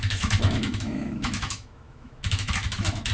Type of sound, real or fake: fake